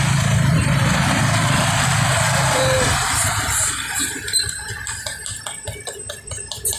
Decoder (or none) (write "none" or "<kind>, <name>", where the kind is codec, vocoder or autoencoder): none